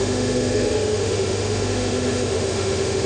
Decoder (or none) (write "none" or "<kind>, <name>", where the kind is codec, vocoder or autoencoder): autoencoder, DAC-VAE